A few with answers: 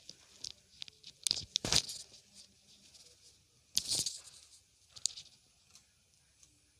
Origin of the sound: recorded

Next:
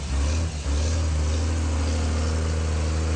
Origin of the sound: recorded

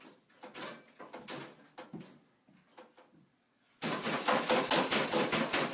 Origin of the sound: recorded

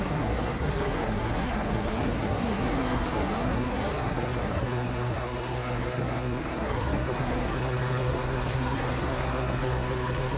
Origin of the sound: remade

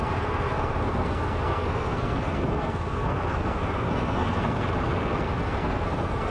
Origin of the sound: remade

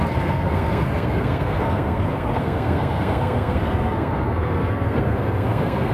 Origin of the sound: remade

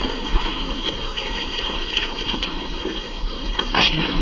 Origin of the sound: remade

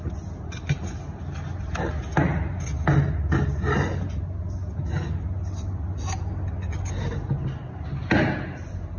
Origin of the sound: recorded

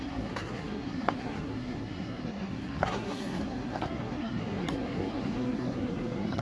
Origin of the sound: remade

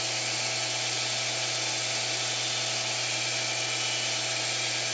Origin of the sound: recorded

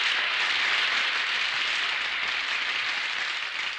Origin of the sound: recorded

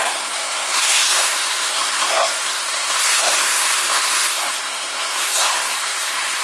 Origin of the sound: remade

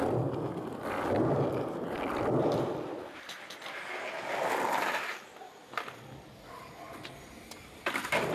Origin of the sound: recorded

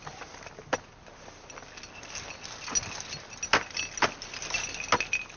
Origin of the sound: recorded